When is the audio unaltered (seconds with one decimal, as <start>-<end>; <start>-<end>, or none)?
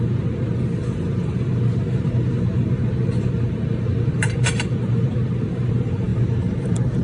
none